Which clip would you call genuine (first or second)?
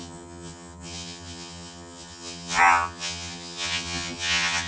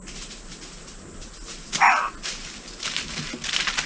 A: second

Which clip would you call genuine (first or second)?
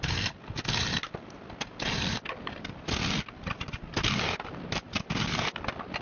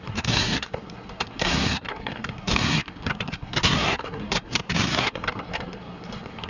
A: first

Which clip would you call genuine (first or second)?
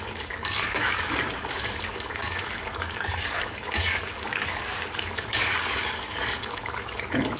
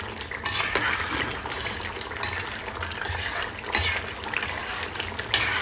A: second